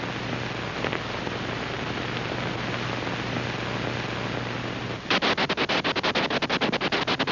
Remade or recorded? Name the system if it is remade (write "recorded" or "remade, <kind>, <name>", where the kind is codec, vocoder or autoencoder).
recorded